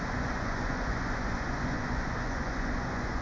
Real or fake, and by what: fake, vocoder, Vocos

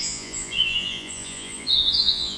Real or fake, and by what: fake, vocoder, Vocos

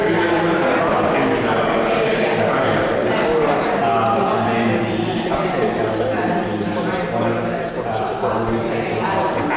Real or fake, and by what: real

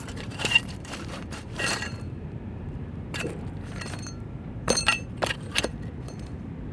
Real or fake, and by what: fake, vocoder, BigVGAN v2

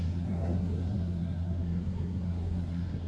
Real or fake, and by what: fake, codec, SNAC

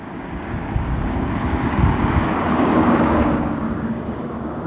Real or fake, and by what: fake, codec, DAC